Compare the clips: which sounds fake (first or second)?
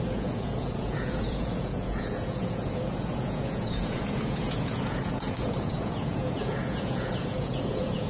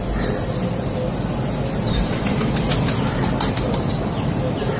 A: first